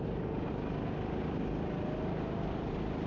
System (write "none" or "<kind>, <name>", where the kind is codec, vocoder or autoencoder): none